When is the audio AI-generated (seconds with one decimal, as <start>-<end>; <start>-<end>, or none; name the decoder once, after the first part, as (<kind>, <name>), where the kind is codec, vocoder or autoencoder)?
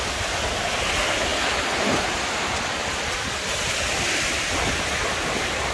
none